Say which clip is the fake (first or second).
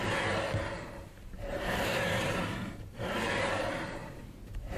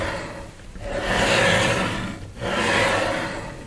first